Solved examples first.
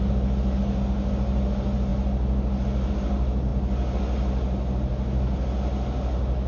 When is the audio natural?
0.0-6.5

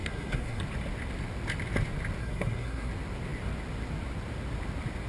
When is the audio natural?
0.6-2.2; 2.9-5.1